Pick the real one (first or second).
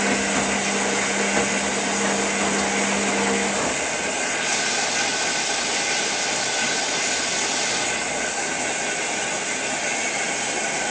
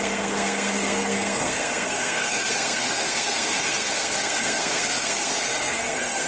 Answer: first